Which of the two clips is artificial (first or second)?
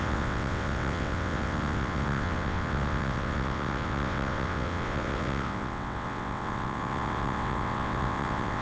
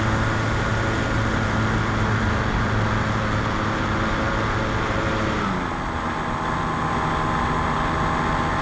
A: first